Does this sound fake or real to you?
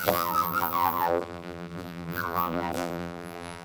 fake